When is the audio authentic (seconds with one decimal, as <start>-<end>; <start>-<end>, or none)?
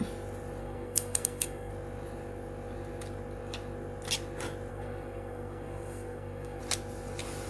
0.0-0.6; 1.7-4.7; 6.6-7.5